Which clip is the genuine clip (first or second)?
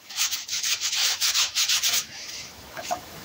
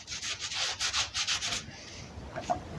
second